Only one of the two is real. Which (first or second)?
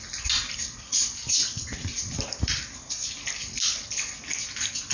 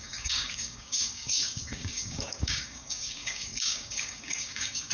first